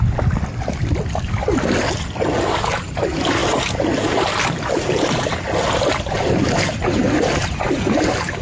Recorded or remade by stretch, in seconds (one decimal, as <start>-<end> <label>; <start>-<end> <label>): 0.0-8.4 recorded